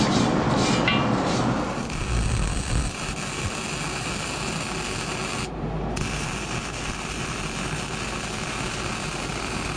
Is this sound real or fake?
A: real